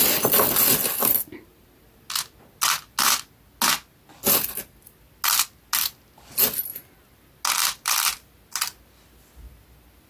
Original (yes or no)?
yes